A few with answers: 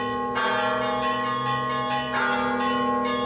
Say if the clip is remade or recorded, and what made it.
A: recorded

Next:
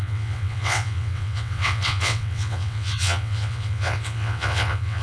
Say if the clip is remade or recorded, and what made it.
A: remade, vocoder, WaveNeXt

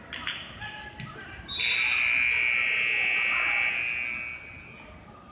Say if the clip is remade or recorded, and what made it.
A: recorded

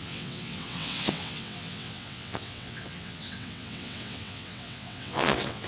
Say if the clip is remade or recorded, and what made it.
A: remade, vocoder, WaveNeXt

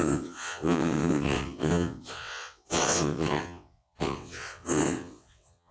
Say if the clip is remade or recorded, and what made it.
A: remade, vocoder, WaveNeXt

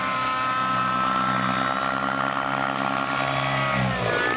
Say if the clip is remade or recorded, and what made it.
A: recorded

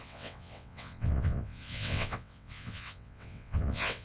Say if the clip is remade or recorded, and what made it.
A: remade, vocoder, WaveNeXt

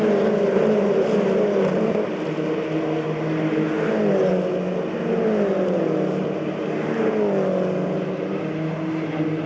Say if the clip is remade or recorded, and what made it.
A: recorded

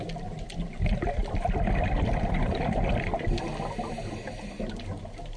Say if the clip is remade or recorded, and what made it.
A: recorded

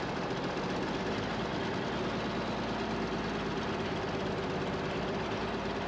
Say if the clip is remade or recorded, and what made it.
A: recorded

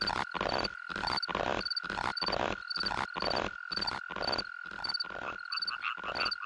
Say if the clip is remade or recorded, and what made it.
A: recorded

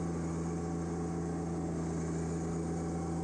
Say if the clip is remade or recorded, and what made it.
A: recorded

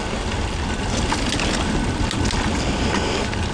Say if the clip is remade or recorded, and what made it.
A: recorded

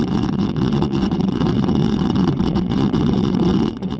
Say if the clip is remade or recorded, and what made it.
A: remade, vocoder, WaveNeXt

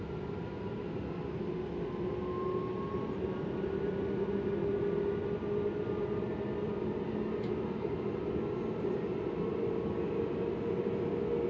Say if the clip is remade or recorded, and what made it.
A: recorded